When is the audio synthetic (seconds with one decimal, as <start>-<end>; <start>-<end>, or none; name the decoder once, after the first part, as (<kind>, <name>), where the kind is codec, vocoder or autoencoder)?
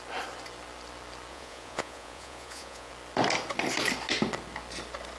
1.3-2.9 (vocoder, Vocos)